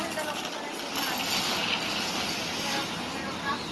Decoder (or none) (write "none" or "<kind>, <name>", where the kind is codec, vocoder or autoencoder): none